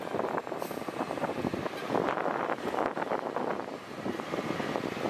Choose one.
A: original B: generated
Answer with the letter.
A